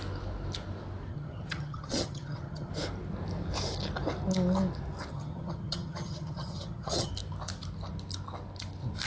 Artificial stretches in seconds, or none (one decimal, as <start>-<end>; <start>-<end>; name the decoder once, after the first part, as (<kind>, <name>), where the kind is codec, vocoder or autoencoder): 1.1-2.7 (vocoder, HiFi-GAN); 5.1-7.1